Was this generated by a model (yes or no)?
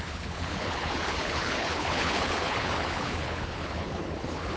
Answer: yes